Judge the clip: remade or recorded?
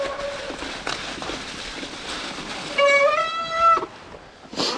recorded